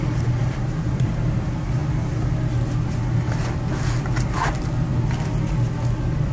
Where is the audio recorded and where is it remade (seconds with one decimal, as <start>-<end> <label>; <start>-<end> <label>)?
0.0-0.4 recorded; 0.4-1.1 remade; 1.1-6.3 recorded